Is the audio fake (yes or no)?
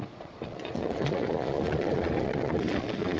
yes